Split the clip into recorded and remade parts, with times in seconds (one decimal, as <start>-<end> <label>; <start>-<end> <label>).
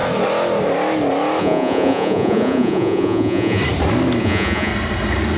0.0-1.4 recorded; 1.4-3.6 remade; 3.6-4.2 recorded; 4.2-4.7 remade; 4.7-5.4 recorded